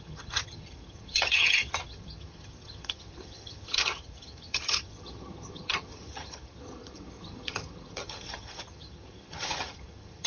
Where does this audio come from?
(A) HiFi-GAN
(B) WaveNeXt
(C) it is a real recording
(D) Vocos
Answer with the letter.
A